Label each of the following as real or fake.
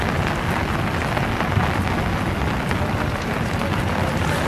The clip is real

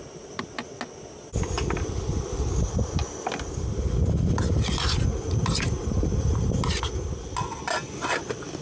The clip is real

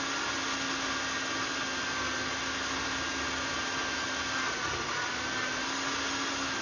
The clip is real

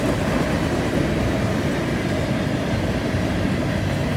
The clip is real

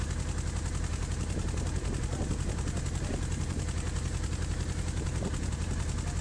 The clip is real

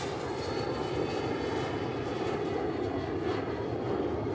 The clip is real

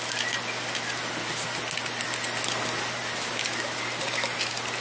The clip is real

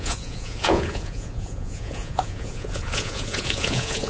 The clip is fake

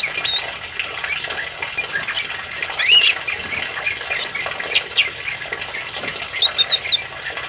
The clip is real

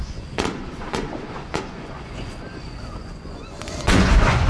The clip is fake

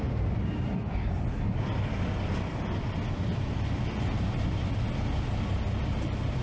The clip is real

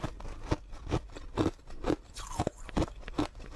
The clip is real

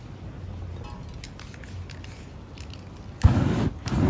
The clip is real